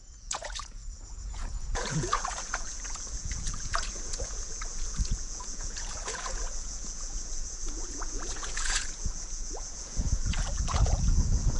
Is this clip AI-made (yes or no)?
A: yes